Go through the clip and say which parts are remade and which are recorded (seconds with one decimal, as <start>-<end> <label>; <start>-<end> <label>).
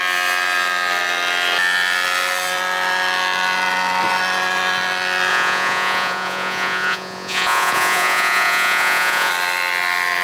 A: 0.0-5.3 recorded; 5.3-9.3 remade; 9.3-10.2 recorded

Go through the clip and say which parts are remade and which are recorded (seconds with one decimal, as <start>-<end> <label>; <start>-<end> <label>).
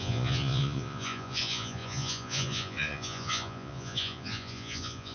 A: 0.0-5.1 remade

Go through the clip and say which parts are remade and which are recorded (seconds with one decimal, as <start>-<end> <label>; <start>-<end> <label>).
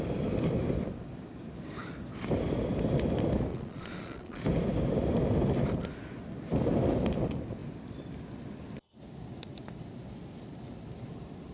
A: 0.0-3.5 recorded; 3.5-4.4 remade; 4.4-11.5 recorded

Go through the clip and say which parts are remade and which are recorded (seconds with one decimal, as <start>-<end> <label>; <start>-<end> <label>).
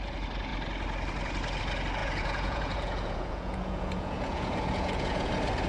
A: 0.0-2.0 recorded; 2.0-5.3 remade; 5.3-5.7 recorded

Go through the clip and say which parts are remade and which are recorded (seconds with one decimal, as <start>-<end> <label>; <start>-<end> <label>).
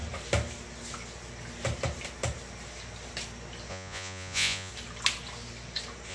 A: 0.0-3.7 recorded; 3.7-4.7 remade; 4.7-6.1 recorded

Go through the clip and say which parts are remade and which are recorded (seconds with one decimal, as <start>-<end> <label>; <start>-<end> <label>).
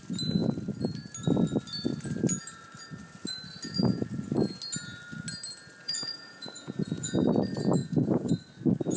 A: 0.0-5.8 recorded; 5.8-7.3 remade; 7.3-7.8 recorded; 7.8-8.3 remade; 8.3-9.0 recorded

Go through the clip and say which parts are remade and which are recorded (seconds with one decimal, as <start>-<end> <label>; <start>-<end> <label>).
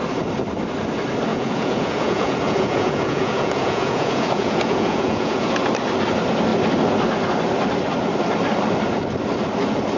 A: 0.0-1.3 recorded; 1.3-5.6 remade; 5.6-10.0 recorded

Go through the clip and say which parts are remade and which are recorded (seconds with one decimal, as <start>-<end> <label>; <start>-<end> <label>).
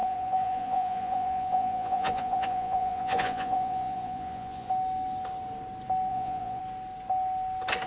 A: 0.0-4.7 remade; 4.7-6.1 recorded; 6.1-6.6 remade; 6.6-7.9 recorded